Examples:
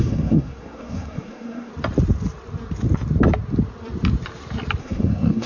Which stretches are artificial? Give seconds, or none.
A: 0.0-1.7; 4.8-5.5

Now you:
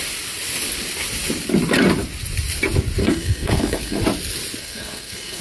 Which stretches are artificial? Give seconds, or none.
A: 3.0-4.0; 4.6-5.4